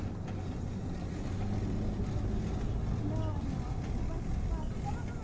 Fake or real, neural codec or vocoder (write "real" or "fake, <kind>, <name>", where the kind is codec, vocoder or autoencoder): real